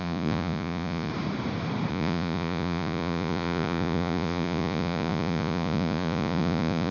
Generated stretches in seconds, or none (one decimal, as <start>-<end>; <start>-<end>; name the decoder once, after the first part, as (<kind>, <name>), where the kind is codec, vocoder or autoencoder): 0.0-1.1 (vocoder, Vocos); 1.9-6.9

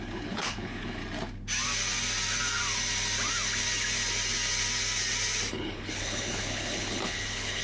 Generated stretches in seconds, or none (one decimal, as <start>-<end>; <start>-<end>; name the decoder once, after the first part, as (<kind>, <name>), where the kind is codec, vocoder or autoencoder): 0.0-1.0 (codec, HILCodec); 5.5-7.6

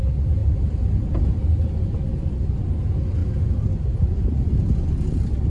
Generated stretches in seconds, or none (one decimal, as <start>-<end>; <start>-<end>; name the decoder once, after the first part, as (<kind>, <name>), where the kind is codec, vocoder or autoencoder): none

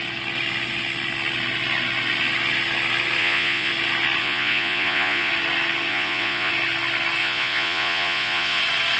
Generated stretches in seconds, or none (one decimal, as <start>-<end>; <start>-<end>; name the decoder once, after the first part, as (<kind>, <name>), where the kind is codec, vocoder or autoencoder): 3.2-3.7 (vocoder, Vocos); 4.2-5.3; 5.9-6.5; 7.2-8.6

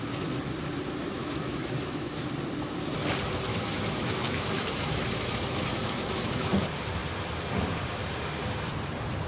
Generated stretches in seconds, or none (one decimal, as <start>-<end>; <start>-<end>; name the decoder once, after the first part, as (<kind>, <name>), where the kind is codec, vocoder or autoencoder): 1.2-2.3 (autoencoder, DAC-VAE); 3.5-6.5

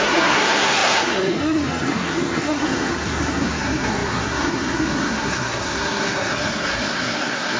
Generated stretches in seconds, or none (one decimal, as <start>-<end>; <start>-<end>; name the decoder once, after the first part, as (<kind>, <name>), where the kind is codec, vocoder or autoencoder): 0.0-7.6 (codec, SNAC)

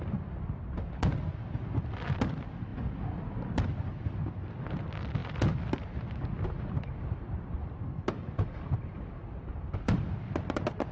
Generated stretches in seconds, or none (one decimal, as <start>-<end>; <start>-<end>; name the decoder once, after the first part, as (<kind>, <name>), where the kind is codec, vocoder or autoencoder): none

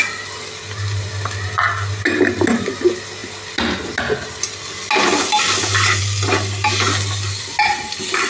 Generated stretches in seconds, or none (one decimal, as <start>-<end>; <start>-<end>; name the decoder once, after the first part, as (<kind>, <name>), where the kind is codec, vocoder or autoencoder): none